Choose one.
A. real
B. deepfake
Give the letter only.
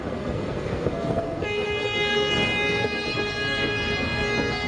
B